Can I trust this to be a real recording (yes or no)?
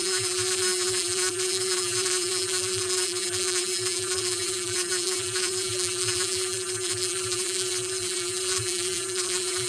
no